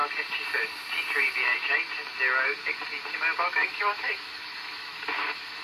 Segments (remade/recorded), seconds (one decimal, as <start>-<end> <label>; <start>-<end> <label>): 0.0-3.4 recorded; 3.4-5.6 remade